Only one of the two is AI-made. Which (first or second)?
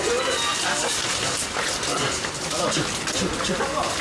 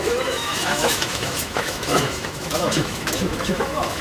second